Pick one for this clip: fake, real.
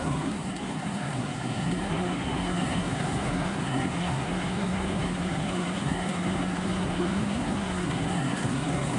fake